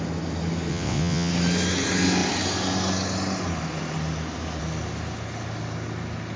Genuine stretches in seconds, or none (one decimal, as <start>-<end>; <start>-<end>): 0.0-0.7; 1.3-6.4